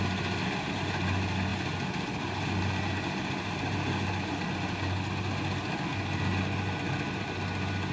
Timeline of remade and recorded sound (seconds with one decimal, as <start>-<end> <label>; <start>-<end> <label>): 0.0-7.9 recorded